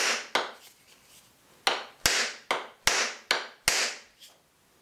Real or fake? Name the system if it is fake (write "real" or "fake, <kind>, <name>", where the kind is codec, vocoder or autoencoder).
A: real